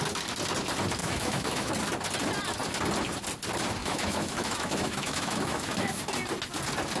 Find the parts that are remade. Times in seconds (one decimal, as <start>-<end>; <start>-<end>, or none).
1.0-1.7; 3.8-6.0